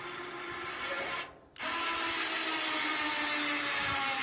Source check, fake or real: real